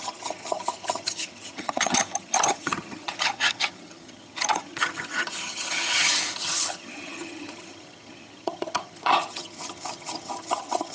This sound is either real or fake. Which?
fake